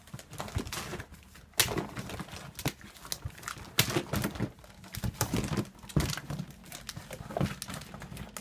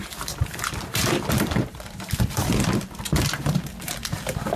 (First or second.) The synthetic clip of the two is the second